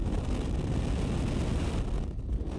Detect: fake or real real